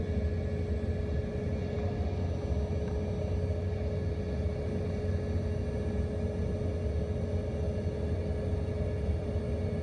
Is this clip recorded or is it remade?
recorded